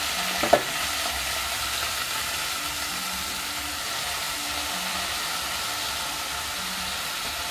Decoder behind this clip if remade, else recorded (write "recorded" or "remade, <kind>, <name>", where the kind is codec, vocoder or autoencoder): recorded